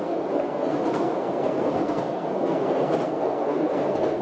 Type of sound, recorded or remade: remade